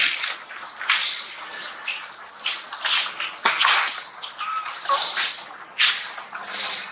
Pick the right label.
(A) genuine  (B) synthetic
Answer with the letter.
A